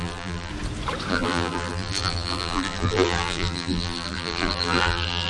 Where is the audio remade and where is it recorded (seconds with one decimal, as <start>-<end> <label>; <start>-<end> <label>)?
0.0-0.5 remade; 0.5-1.1 recorded; 1.1-5.3 remade